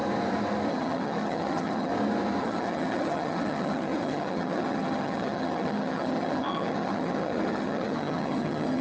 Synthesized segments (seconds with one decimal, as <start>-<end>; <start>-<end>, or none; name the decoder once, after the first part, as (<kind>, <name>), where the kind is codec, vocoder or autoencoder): 0.7-1.9 (vocoder, HiFi-GAN); 2.4-8.8